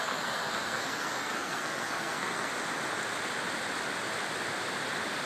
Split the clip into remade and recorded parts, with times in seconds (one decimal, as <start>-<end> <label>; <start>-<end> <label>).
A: 0.0-2.5 remade; 2.5-5.3 recorded